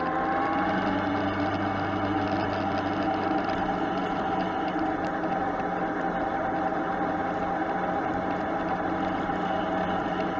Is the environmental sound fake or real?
real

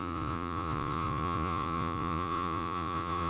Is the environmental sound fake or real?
fake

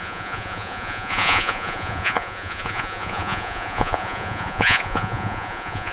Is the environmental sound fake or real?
fake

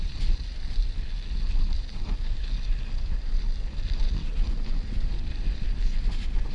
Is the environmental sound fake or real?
real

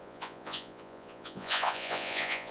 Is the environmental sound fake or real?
fake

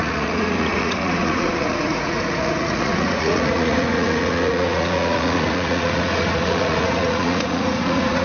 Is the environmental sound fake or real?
fake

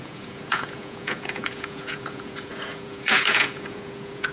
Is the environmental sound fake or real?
fake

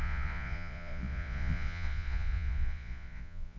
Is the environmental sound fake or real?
fake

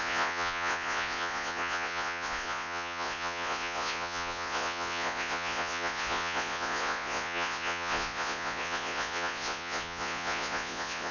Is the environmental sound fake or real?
fake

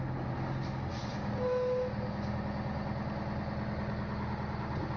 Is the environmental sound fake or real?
real